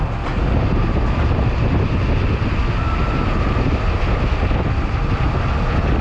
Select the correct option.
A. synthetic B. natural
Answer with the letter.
B